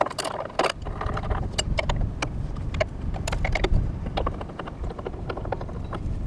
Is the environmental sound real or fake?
real